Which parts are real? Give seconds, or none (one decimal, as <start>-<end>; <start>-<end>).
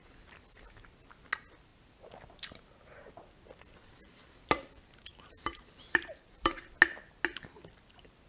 0.0-5.1; 6.6-8.3